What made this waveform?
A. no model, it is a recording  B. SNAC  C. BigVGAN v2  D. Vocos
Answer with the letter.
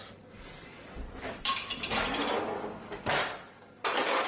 A